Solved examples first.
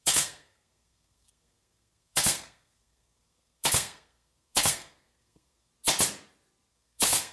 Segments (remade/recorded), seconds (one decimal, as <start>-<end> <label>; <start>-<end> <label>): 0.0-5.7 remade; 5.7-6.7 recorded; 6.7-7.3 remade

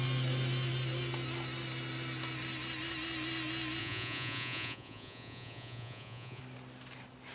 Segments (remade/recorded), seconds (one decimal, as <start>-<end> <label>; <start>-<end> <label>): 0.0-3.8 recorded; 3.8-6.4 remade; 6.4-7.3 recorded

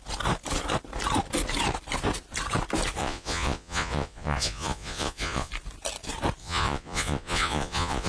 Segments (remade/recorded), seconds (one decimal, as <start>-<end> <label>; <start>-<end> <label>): 0.0-3.0 recorded; 3.0-5.5 remade; 5.5-6.4 recorded; 6.4-8.1 remade